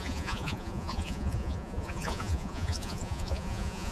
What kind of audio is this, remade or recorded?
remade